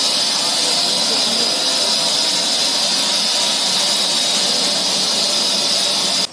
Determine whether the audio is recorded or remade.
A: recorded